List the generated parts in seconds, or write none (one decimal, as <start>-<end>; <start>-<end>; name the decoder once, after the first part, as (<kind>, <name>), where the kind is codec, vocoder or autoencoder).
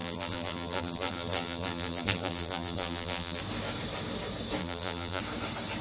0.0-3.4 (vocoder, BigVGAN v2); 4.6-5.2